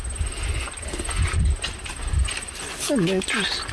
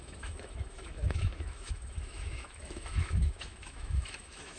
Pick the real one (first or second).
first